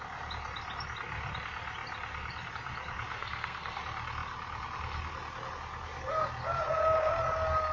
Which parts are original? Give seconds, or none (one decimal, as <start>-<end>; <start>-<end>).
0.0-3.1; 3.8-7.7